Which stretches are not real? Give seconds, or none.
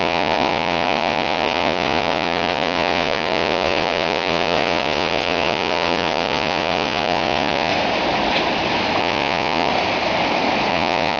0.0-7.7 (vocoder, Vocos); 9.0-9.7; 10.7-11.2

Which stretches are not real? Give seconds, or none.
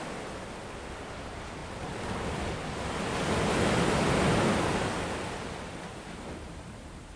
none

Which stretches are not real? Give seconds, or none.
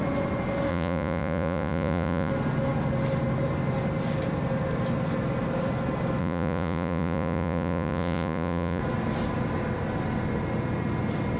0.7-2.3 (vocoder, Vocos); 6.2-8.8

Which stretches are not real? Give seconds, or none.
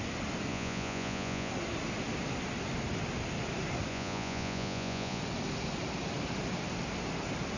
0.5-1.5 (vocoder, Vocos); 3.9-5.2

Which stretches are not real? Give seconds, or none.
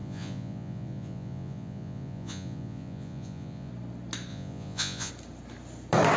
0.0-3.7 (vocoder, Vocos); 4.3-5.1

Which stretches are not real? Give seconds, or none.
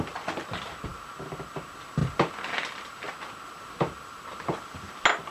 none